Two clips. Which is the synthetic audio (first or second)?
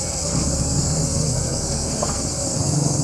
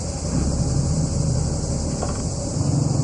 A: first